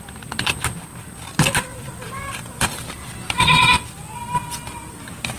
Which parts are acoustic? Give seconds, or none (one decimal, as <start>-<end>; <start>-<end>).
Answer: 0.0-1.7; 3.6-5.4